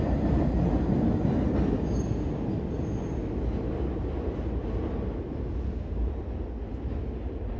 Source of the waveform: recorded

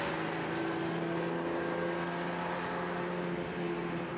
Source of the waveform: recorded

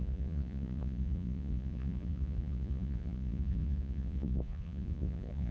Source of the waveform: remade